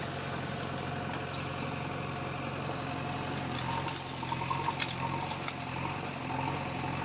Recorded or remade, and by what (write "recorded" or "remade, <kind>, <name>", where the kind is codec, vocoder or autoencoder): recorded